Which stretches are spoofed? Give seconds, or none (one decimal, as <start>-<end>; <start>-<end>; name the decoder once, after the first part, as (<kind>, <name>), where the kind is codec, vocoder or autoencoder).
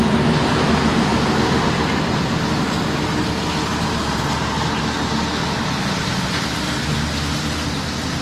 3.7-4.8 (vocoder, BigVGAN v2); 5.4-6.4